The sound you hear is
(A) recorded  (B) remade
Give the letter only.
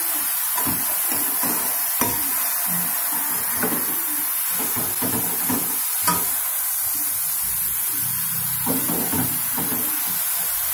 A